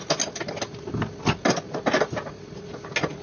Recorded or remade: recorded